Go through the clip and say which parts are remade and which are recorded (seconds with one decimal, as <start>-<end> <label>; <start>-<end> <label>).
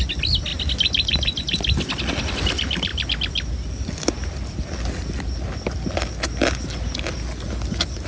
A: 0.0-8.1 recorded